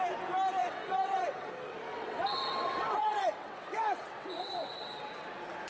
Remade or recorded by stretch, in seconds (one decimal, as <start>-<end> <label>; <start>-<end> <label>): 0.0-0.6 recorded; 0.6-1.5 remade; 1.5-1.9 recorded; 1.9-5.1 remade; 5.1-5.7 recorded